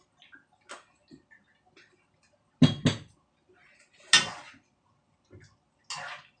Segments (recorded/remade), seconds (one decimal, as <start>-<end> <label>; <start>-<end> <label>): 0.0-6.4 recorded